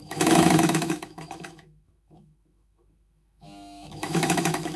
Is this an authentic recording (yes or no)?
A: no